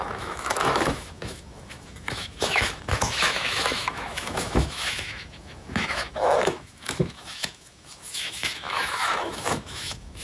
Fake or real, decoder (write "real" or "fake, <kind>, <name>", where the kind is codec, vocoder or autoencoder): fake, autoencoder, DAC-VAE